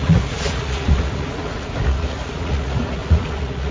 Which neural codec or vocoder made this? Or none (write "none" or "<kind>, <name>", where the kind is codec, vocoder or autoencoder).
vocoder, Vocos